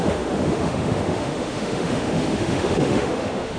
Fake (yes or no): yes